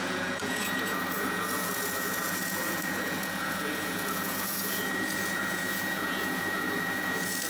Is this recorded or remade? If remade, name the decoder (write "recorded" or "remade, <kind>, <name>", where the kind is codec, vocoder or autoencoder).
remade, vocoder, Vocos